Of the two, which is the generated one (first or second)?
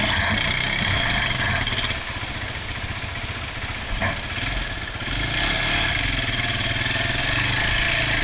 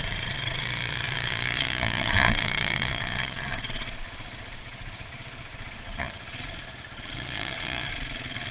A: second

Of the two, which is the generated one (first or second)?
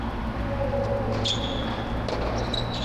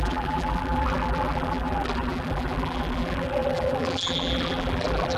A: second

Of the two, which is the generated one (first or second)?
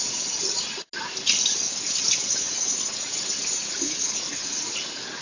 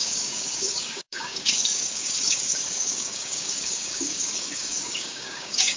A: second